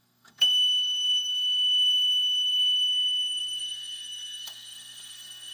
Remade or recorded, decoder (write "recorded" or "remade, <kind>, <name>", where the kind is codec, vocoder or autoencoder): remade, codec, SNAC